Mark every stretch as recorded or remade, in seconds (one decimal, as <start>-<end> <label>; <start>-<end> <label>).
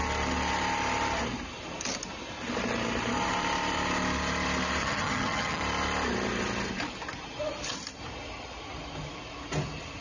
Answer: 0.0-4.8 recorded; 4.8-5.6 remade; 5.6-10.0 recorded